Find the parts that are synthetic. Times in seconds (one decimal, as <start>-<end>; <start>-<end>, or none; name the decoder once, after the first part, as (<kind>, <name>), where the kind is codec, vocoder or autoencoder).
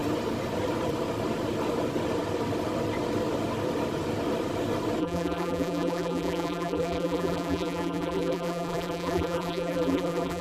5.0-10.4 (vocoder, BigVGAN v2)